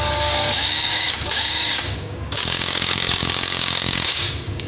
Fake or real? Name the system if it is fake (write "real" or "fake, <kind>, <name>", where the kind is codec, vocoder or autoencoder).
fake, codec, DAC